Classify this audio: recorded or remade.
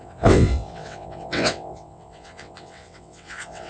remade